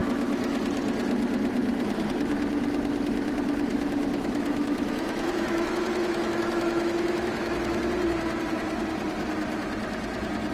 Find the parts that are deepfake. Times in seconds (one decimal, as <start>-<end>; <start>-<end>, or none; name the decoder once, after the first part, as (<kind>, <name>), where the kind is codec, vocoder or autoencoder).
0.0-0.6 (autoencoder, DAC-VAE); 3.7-7.8